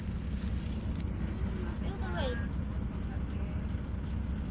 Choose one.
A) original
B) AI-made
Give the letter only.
A